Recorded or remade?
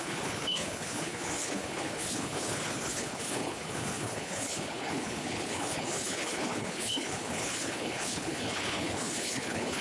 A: remade